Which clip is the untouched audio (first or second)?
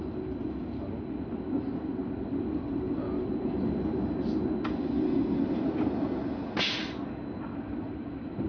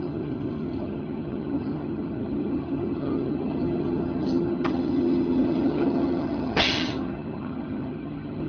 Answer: first